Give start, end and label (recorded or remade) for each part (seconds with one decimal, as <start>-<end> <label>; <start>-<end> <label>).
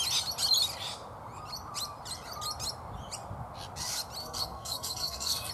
0.0-4.2 recorded; 4.2-5.5 remade